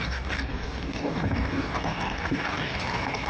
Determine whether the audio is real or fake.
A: fake